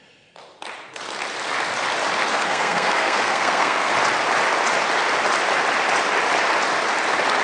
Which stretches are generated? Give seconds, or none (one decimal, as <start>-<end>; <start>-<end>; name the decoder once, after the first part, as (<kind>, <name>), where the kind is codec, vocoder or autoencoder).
2.3-3.9 (codec, SNAC)